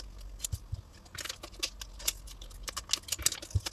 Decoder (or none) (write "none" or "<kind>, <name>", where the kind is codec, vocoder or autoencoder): none